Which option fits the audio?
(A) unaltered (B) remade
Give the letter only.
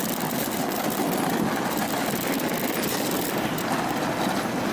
A